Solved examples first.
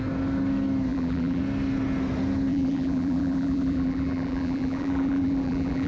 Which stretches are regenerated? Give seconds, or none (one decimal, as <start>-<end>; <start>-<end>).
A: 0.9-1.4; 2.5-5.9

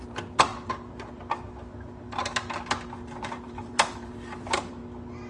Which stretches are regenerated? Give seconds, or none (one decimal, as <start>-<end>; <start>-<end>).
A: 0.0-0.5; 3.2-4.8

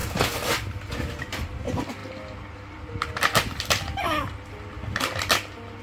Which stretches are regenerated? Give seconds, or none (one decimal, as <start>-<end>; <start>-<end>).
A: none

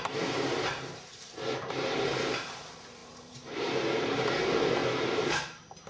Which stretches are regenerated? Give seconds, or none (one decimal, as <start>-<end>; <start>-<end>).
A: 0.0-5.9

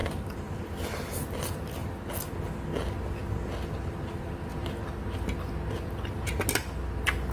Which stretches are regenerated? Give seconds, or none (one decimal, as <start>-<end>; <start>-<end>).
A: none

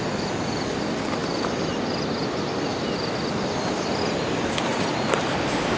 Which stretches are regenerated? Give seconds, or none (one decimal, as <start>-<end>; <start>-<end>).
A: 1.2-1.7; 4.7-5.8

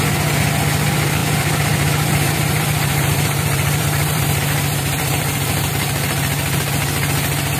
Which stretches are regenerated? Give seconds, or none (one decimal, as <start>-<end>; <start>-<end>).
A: 1.2-5.7

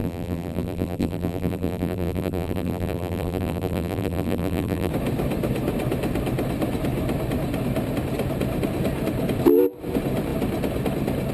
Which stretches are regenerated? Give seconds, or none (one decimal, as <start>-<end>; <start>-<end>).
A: 0.0-4.9